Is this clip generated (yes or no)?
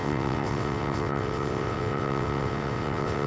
yes